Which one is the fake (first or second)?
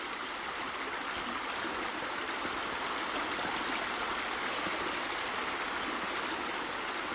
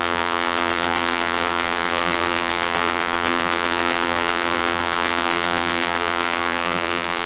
second